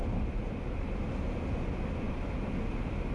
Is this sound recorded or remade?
recorded